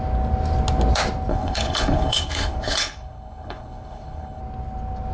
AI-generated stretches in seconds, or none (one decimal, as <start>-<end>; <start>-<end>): 1.3-4.4